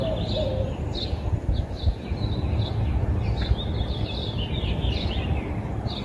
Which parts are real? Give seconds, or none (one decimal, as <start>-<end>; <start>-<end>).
0.0-4.2; 5.5-6.0